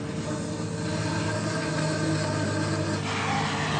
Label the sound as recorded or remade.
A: recorded